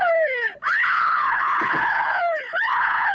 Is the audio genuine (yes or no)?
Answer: no